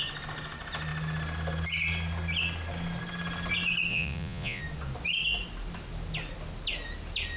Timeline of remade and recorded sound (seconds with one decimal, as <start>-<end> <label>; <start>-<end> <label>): 0.0-3.9 recorded; 3.9-4.6 remade; 4.6-7.4 recorded